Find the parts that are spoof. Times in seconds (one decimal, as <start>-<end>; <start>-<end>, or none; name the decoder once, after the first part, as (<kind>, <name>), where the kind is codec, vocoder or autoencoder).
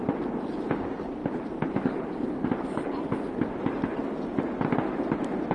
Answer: none